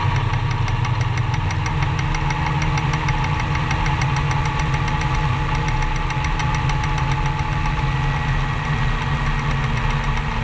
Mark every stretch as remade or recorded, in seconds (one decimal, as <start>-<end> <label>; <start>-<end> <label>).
0.0-10.4 recorded